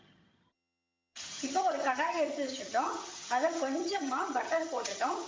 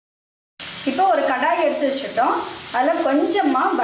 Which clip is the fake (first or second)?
first